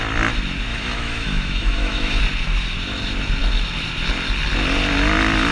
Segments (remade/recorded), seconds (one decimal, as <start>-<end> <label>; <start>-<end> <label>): 0.0-0.7 recorded; 0.7-2.2 remade; 2.2-5.5 recorded